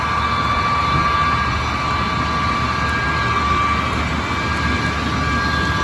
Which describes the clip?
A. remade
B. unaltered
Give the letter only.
B